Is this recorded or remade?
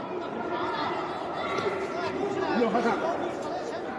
remade